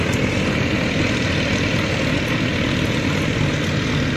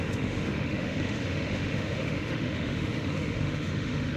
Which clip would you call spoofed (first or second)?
second